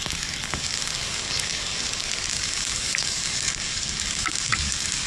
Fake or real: fake